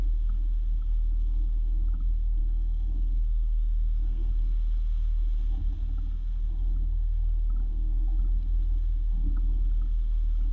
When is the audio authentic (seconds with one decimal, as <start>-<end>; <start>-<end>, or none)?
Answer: 0.0-2.4; 4.3-7.7; 8.2-10.5